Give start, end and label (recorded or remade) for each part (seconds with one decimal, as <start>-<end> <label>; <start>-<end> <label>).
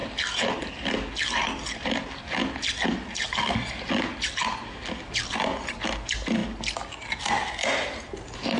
0.0-8.6 recorded